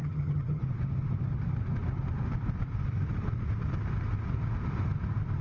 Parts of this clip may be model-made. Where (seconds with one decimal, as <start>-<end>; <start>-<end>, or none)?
0.0-0.6